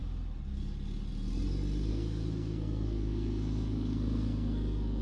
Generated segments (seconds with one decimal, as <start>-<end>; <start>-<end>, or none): 1.9-5.0